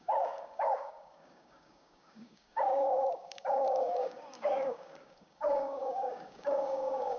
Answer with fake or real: fake